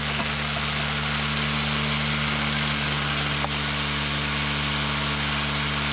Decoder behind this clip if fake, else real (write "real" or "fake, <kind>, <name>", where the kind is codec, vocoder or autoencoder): real